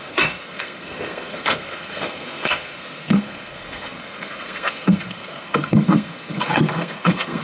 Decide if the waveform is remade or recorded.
remade